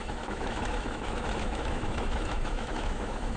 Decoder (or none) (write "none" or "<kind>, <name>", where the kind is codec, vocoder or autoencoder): autoencoder, DAC-VAE